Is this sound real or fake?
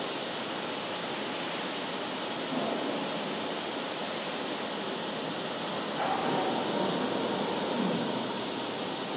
real